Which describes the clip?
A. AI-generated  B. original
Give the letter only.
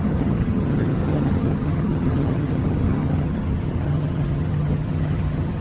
A